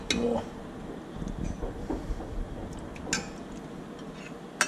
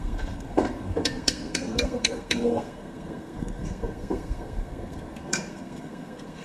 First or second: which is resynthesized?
second